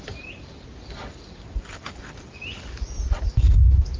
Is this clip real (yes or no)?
yes